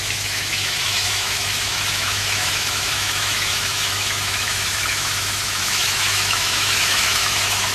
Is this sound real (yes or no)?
no